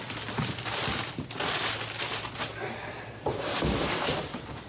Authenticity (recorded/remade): remade